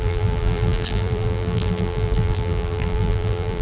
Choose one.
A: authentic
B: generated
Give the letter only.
B